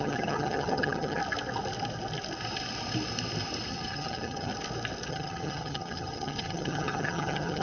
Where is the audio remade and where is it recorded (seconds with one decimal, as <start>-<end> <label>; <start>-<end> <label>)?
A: 0.0-1.2 remade; 1.2-3.7 recorded; 3.7-4.5 remade; 4.5-5.1 recorded; 5.1-7.6 remade